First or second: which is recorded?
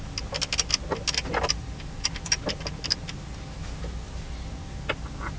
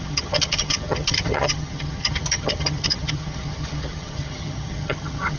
first